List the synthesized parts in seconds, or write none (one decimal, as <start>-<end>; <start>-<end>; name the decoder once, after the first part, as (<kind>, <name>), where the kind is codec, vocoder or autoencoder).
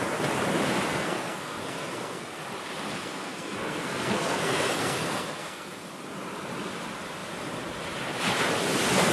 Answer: 0.9-2.4 (codec, SNAC); 2.9-5.9